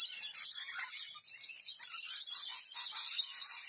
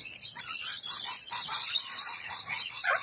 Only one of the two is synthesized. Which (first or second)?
second